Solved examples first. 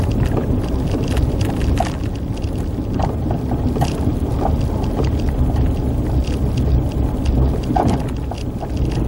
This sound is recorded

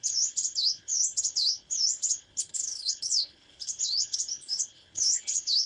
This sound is remade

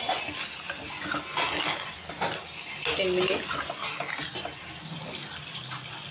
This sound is recorded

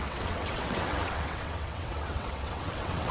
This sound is remade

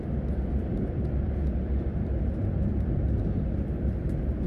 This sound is remade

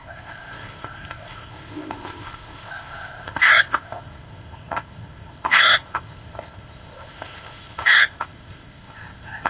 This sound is remade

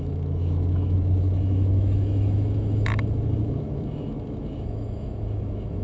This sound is remade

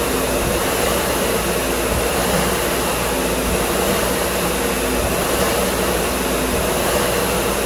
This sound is recorded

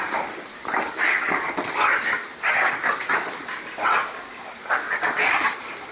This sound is remade